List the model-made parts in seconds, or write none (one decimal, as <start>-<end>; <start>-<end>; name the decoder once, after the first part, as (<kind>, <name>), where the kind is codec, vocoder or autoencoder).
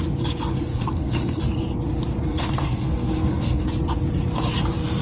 0.7-1.4 (codec, SNAC); 2.3-3.7